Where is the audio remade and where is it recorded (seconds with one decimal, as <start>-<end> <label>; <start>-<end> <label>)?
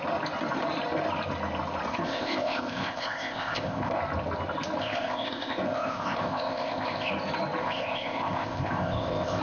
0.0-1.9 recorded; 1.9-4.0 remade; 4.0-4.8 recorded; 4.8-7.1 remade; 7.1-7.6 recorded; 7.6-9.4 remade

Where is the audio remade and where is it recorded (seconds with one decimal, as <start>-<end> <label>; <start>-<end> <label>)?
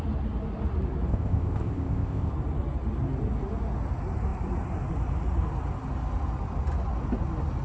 0.0-1.1 recorded; 1.1-2.3 remade; 2.3-7.6 recorded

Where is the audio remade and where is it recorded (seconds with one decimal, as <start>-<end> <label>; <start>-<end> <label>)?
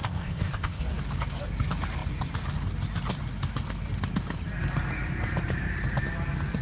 0.0-0.8 remade; 0.8-6.6 recorded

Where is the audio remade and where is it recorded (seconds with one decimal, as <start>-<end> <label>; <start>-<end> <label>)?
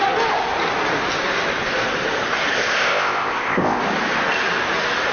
0.0-2.5 recorded; 2.5-3.8 remade; 3.8-5.1 recorded